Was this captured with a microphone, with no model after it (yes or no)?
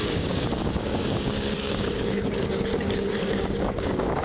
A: no